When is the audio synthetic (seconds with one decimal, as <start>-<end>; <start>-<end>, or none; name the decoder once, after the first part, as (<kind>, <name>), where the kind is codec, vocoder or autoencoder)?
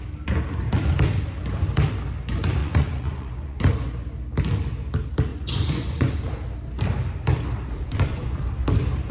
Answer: 2.6-3.6 (vocoder, Vocos); 5.3-6.2